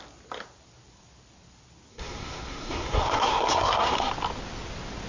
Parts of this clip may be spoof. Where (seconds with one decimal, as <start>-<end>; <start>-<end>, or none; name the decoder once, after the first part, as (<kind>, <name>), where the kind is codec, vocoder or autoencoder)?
1.9-4.1 (codec, SNAC)